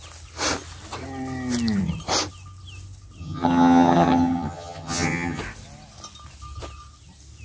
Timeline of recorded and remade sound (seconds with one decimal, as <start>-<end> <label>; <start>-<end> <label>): 0.0-3.2 recorded; 3.2-5.4 remade; 5.4-7.4 recorded